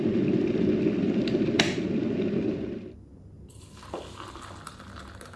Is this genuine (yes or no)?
yes